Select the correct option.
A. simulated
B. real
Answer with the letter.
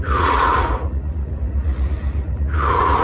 A